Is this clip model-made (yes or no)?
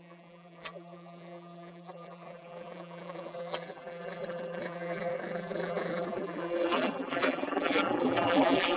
yes